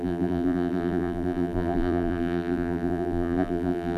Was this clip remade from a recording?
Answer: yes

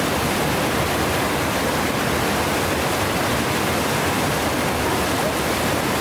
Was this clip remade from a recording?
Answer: no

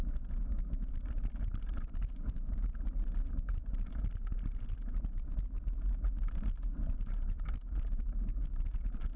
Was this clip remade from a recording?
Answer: yes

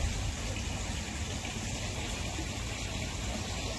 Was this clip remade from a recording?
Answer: no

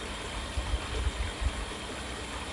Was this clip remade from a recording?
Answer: no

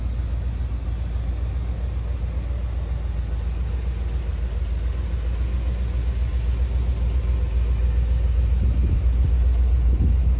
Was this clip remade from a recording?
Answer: no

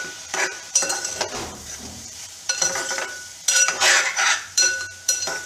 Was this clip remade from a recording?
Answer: yes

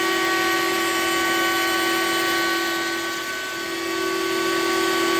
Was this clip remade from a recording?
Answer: no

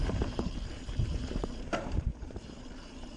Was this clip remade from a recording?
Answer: yes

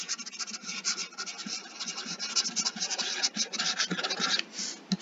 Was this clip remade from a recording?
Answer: no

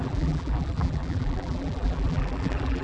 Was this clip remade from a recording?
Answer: yes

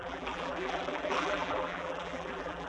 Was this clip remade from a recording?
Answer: yes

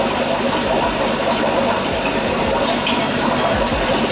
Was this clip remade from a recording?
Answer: no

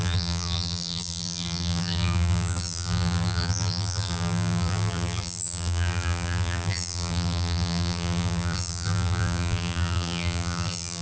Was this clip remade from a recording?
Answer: yes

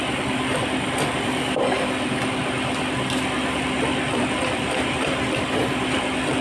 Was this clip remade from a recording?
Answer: yes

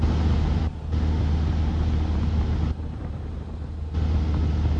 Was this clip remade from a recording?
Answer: no